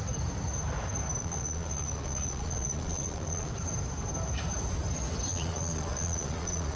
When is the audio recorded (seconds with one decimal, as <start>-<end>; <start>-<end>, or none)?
0.0-1.2; 3.5-5.3